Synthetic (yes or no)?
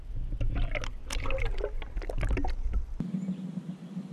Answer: no